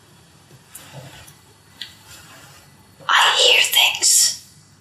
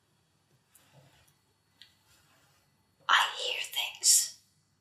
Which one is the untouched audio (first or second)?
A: second